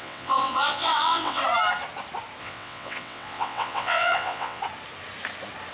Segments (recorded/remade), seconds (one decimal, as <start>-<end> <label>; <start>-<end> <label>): 0.0-1.4 remade; 1.4-2.4 recorded; 2.4-4.6 remade; 4.6-5.7 recorded